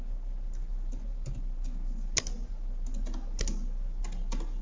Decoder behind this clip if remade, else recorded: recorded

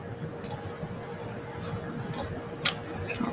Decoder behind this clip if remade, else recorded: recorded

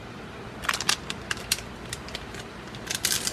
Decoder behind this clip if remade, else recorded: remade, vocoder, BigVGAN v2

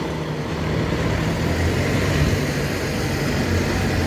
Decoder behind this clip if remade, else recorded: recorded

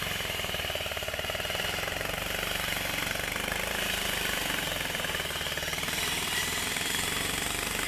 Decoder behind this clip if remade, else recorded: remade, vocoder, BigVGAN v2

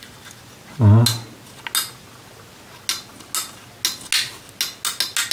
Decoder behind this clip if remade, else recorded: recorded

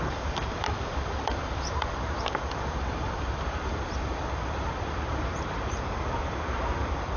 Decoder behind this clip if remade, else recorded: remade, vocoder, BigVGAN v2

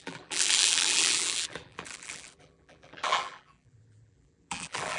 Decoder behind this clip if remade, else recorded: remade, vocoder, BigVGAN v2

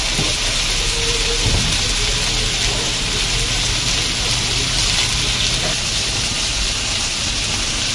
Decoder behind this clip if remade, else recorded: recorded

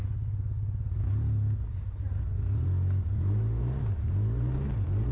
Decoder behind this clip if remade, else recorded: recorded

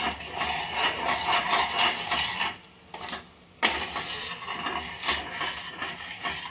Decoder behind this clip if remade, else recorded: recorded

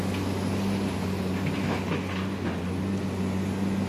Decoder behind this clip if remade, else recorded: recorded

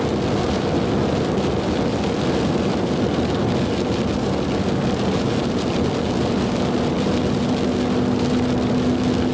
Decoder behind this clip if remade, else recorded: recorded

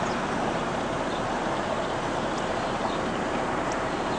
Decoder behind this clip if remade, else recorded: remade, vocoder, BigVGAN v2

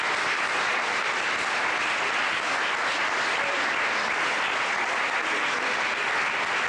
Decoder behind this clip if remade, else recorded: recorded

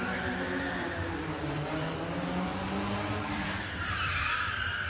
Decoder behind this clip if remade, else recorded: remade, vocoder, BigVGAN v2